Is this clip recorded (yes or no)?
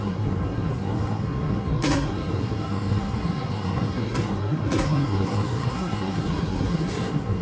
no